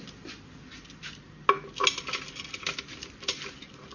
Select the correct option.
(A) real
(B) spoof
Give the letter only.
A